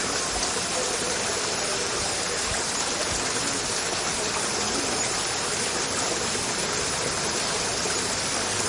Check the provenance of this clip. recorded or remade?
recorded